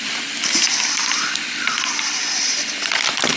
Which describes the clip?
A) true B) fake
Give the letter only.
B